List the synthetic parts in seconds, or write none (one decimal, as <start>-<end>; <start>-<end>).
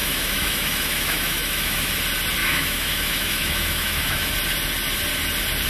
0.0-1.9; 2.4-4.3